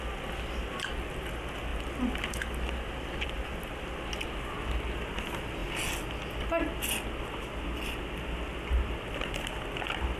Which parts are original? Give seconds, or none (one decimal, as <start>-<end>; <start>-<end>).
0.0-10.2